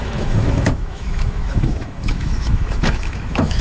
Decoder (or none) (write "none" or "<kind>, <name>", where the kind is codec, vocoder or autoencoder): autoencoder, DAC-VAE